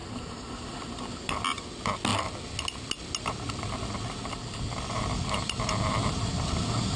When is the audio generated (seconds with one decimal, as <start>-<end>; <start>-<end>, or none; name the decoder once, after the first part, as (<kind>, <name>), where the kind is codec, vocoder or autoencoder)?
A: 0.0-1.0 (vocoder, BigVGAN v2)